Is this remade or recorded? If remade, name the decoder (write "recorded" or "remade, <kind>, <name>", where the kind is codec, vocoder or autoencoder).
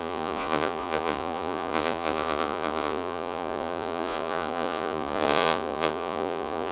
remade, vocoder, Vocos